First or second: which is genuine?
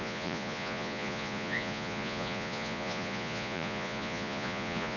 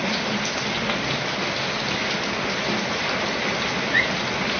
second